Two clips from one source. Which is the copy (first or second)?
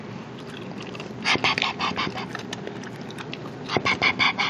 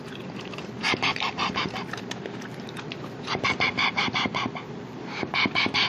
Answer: second